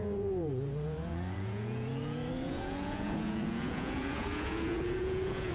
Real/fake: fake